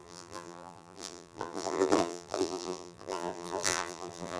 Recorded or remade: remade